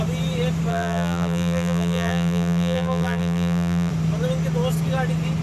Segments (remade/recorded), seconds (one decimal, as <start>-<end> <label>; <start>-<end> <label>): 0.0-0.7 recorded; 0.7-3.9 remade; 3.9-5.4 recorded